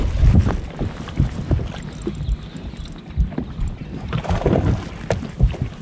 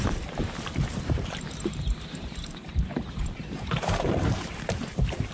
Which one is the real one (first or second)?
first